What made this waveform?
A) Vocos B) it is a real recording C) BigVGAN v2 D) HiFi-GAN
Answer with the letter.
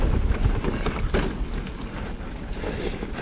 B